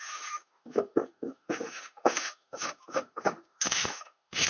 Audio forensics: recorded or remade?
remade